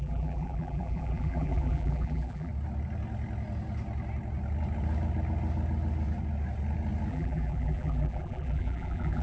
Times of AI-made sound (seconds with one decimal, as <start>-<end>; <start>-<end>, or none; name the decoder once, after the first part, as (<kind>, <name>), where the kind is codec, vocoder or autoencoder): 0.0-2.5 (vocoder, BigVGAN v2); 7.1-9.2